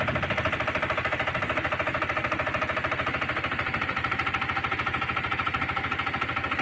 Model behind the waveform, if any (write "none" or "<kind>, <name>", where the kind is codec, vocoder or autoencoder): none